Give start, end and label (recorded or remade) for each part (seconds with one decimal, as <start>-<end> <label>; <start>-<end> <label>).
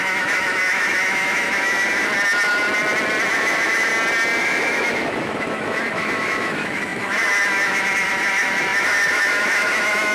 0.0-2.1 remade; 2.1-3.3 recorded; 3.3-3.9 remade; 3.9-4.4 recorded; 4.4-10.1 remade